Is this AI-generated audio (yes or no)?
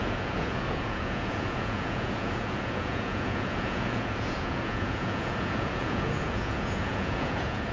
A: yes